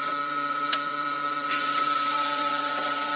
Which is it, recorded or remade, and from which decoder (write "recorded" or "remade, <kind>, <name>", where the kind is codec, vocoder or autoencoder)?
remade, vocoder, WaveNeXt